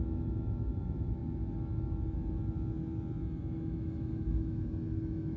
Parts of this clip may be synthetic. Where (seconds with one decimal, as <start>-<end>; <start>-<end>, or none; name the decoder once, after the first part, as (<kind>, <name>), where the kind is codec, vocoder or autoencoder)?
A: 0.0-1.2 (autoencoder, DAC-VAE); 3.4-5.4

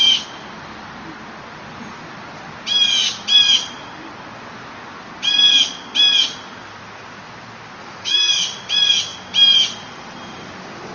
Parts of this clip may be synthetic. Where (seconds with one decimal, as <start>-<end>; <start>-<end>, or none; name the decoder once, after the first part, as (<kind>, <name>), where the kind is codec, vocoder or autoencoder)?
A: 7.8-8.3 (autoencoder, DAC-VAE)